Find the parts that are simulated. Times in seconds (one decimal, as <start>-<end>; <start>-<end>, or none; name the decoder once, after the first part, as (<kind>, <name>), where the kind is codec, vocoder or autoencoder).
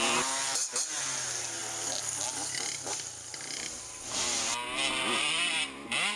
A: none